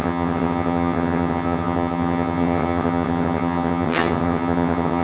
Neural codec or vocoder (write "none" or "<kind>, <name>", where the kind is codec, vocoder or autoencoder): vocoder, HiFi-GAN